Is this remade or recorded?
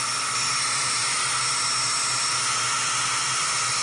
recorded